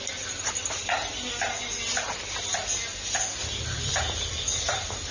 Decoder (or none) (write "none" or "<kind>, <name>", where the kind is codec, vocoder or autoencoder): none